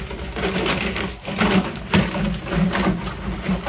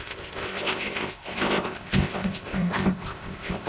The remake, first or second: second